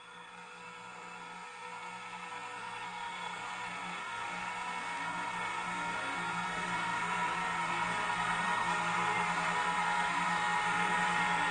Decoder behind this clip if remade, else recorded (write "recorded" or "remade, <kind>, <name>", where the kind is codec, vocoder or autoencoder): remade, codec, SNAC